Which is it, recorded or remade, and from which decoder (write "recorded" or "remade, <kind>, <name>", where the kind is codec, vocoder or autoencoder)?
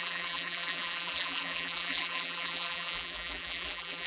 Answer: remade, vocoder, BigVGAN v2